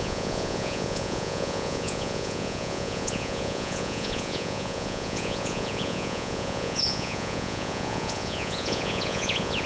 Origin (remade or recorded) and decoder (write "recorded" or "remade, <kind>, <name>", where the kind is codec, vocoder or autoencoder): remade, vocoder, Vocos